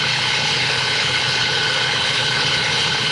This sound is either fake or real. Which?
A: fake